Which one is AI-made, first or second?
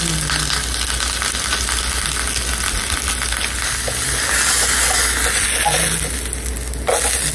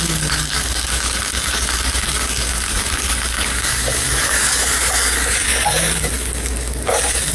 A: second